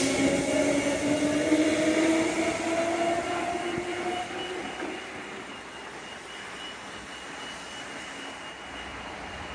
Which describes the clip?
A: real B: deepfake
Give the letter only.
A